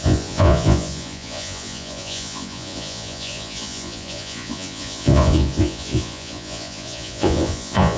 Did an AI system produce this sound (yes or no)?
yes